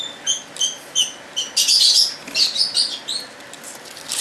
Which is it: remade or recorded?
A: recorded